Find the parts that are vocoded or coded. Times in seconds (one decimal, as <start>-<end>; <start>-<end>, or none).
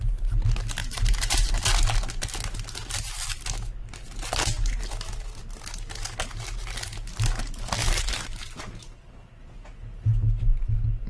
0.8-1.5; 7.8-8.5